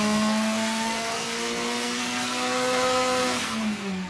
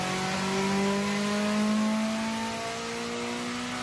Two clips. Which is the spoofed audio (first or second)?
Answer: first